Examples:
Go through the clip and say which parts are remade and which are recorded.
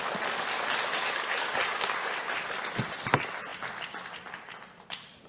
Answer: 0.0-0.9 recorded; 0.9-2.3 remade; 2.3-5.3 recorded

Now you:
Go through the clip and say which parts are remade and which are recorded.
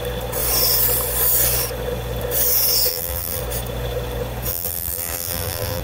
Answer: 0.0-2.9 recorded; 2.9-3.4 remade; 3.4-4.5 recorded; 4.5-5.8 remade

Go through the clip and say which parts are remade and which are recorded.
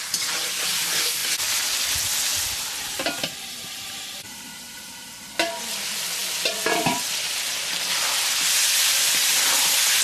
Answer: 0.0-2.3 recorded; 2.3-5.3 remade; 5.3-6.2 recorded; 6.2-7.6 remade; 7.6-10.0 recorded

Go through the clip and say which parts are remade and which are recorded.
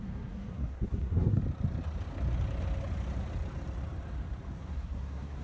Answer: 0.0-1.4 remade; 1.4-4.6 recorded; 4.6-5.4 remade